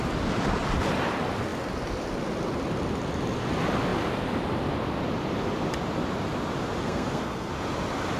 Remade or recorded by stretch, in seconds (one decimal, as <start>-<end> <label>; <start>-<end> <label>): 0.0-6.8 recorded; 6.8-7.5 remade; 7.5-8.2 recorded